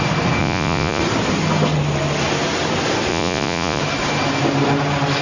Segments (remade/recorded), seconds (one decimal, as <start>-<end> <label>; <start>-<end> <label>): 0.0-0.4 recorded; 0.4-1.0 remade; 1.0-3.1 recorded; 3.1-3.8 remade; 3.8-5.2 recorded